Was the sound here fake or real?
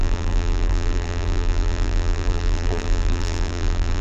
fake